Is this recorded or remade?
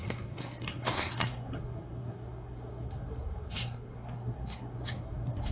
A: remade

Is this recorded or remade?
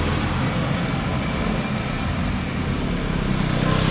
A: recorded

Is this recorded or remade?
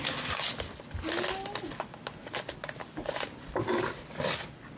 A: recorded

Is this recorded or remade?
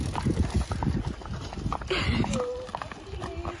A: recorded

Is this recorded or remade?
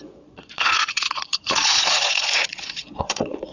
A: remade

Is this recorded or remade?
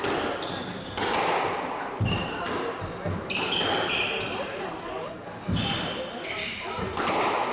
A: recorded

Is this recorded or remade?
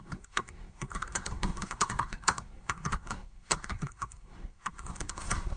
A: remade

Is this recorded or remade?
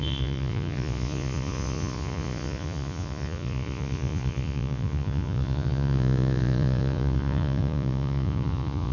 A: remade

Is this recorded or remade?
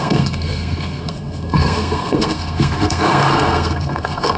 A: remade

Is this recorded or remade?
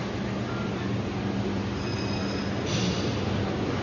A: recorded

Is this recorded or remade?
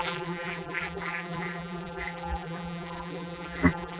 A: remade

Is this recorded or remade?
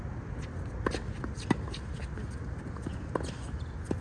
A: recorded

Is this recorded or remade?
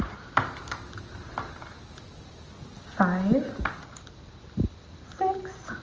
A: recorded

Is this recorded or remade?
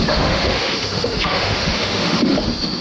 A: remade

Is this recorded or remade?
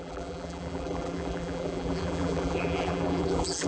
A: remade